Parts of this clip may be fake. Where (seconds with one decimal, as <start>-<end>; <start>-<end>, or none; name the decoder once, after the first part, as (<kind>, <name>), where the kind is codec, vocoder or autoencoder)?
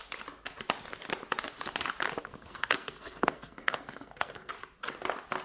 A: 2.2-4.5 (codec, SNAC)